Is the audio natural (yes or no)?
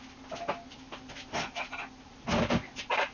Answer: yes